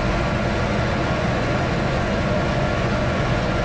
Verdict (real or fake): fake